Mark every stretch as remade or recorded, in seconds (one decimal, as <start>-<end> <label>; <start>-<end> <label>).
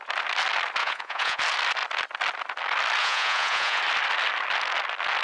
0.0-0.8 recorded; 0.8-1.4 remade; 1.4-3.0 recorded; 3.0-3.8 remade; 3.8-5.2 recorded